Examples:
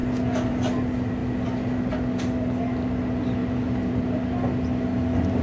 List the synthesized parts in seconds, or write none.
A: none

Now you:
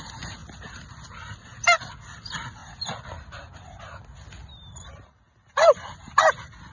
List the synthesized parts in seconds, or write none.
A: none

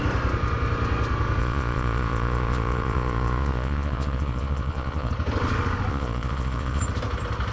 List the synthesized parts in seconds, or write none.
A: 1.4-5.1 (vocoder, Vocos); 5.9-6.8

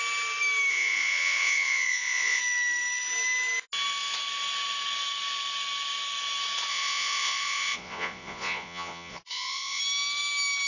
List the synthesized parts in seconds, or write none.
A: 0.7-2.4 (vocoder, Vocos); 6.7-9.8

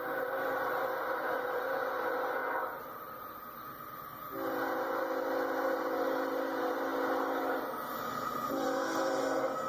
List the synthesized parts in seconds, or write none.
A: none